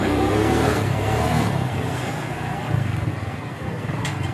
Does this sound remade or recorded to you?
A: remade